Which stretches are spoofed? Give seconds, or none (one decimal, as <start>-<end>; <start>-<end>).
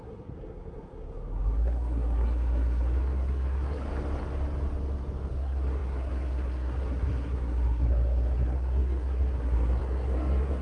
0.0-3.9; 5.3-10.6